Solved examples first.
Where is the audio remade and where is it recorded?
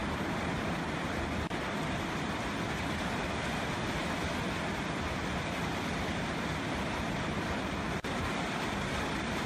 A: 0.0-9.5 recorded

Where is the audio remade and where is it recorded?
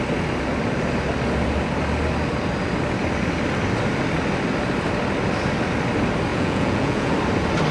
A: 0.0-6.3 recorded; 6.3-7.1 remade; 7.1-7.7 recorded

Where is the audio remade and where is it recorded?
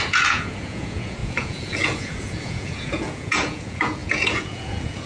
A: 0.0-5.1 remade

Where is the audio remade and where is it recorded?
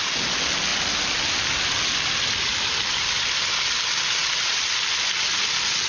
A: 0.0-5.9 recorded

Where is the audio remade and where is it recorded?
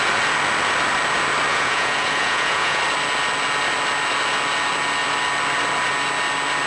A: 0.0-1.5 recorded; 1.5-2.8 remade; 2.8-6.7 recorded